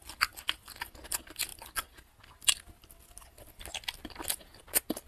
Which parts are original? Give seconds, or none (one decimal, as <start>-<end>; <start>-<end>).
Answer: 0.0-5.1